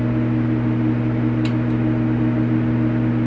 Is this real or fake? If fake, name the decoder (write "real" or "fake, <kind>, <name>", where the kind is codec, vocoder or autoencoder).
real